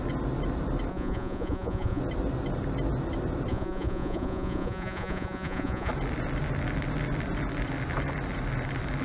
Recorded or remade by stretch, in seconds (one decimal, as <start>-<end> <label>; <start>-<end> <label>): 0.0-0.9 recorded; 0.9-2.0 remade; 2.0-3.5 recorded; 3.5-5.9 remade; 5.9-9.0 recorded